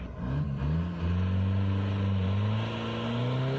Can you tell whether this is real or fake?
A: real